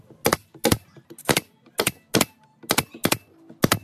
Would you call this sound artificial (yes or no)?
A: no